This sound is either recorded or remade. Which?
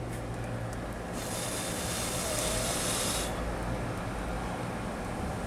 recorded